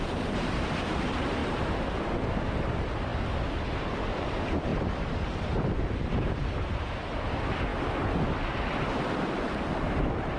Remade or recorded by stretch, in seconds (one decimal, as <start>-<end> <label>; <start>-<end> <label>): 0.0-1.4 remade; 1.4-2.3 recorded; 2.3-7.7 remade; 7.7-8.6 recorded; 8.6-10.4 remade